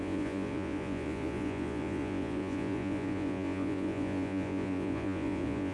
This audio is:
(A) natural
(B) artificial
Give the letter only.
B